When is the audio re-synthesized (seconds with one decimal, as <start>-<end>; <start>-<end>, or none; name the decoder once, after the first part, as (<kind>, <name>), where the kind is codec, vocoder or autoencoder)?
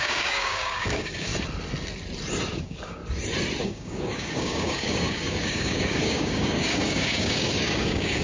0.0-1.3 (codec, DAC); 2.6-3.0; 3.6-8.2